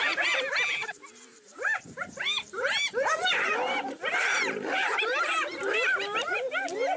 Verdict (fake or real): fake